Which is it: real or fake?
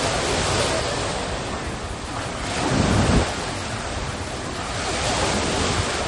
real